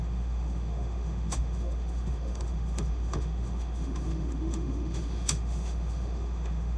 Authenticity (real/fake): fake